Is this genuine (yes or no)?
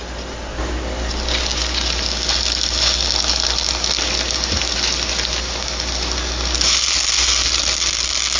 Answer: yes